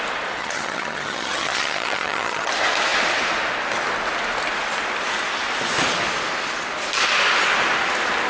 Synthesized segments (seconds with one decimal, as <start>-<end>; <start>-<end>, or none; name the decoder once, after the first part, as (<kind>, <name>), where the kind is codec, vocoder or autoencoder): 0.4-2.5 (vocoder, HiFi-GAN)